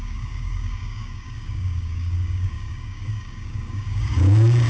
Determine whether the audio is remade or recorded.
remade